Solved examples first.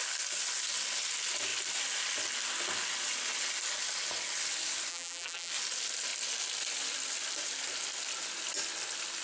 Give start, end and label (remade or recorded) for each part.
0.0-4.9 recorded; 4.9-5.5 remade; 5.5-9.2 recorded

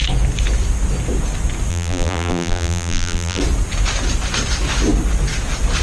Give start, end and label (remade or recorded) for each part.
0.0-1.7 recorded; 1.7-3.4 remade; 3.4-5.8 recorded

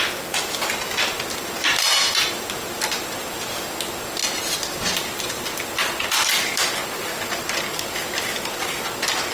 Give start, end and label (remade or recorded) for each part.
0.0-9.3 recorded

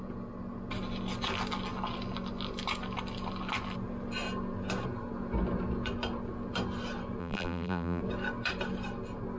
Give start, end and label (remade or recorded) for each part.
0.0-7.2 recorded; 7.2-8.0 remade; 8.0-9.4 recorded

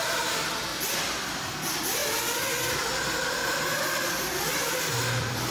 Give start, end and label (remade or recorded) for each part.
0.0-0.7 remade; 0.7-1.2 recorded; 1.2-2.0 remade; 2.0-3.3 recorded; 3.3-5.5 remade

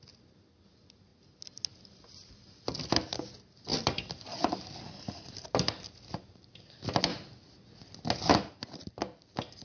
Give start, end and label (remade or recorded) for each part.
0.0-3.7 recorded; 3.7-5.3 remade; 5.3-9.6 recorded

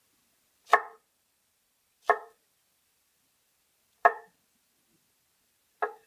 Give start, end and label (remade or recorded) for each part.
0.0-0.7 recorded; 0.7-3.0 remade; 3.0-6.1 recorded